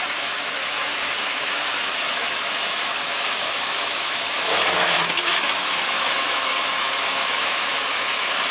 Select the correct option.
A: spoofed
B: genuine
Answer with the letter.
A